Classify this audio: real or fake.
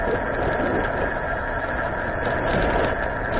real